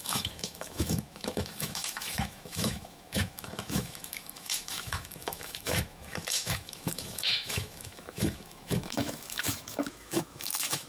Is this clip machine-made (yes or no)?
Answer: yes